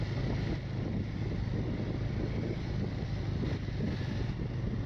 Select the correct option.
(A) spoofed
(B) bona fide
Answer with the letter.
B